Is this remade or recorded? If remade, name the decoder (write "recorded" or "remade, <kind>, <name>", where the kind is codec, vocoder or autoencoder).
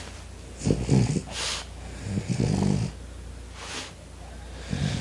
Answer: recorded